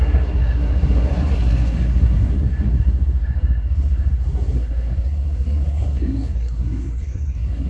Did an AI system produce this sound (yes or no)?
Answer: yes